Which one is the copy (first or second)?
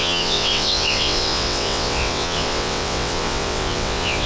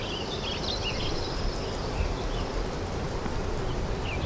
first